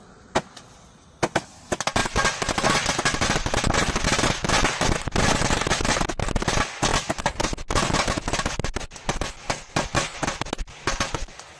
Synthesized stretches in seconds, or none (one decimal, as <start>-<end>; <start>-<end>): none